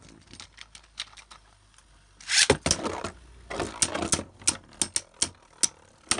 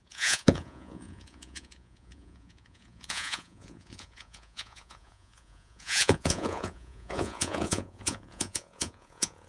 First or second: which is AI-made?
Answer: second